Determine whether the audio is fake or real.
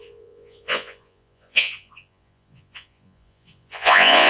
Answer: fake